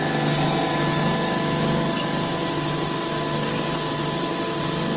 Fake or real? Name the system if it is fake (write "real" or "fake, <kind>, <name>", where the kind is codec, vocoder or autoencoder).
real